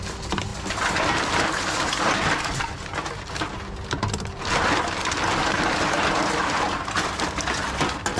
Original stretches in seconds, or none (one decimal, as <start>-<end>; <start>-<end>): 0.0-6.4; 7.0-8.2